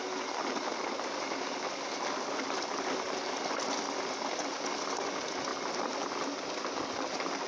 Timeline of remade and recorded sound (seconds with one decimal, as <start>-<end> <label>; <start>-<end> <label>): 0.0-7.5 recorded